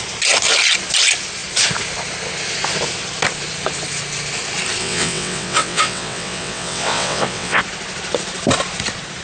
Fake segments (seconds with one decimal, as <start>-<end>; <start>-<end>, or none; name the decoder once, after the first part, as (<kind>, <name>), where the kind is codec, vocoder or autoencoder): 4.8-7.6 (vocoder, WaveNeXt)